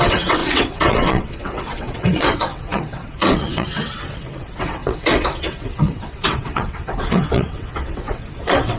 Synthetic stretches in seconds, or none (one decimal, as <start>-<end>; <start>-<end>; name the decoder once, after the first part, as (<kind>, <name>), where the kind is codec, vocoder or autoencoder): 0.0-8.8 (vocoder, WaveNeXt)